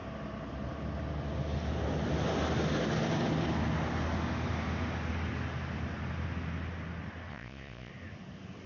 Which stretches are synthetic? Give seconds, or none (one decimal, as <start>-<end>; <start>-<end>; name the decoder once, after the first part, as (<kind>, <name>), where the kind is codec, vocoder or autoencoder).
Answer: 7.3-7.9 (vocoder, Vocos)